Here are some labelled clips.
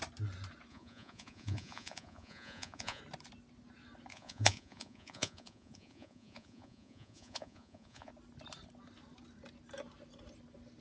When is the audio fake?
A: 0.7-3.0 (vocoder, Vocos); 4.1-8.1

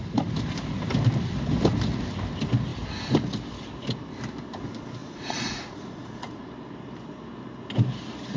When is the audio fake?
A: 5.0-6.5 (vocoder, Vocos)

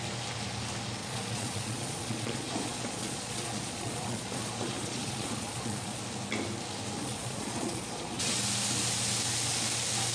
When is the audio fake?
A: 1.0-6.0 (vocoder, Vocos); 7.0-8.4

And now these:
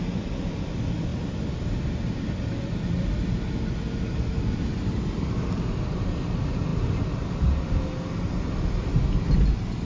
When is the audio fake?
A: none

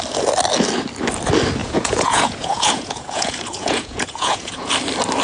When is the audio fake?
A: 1.6-4.7 (vocoder, Vocos)

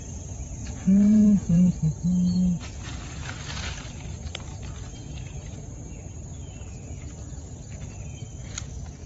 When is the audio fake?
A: 0.6-1.7 (vocoder, Vocos)